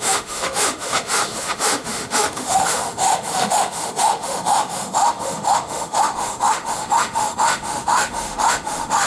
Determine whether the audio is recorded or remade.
remade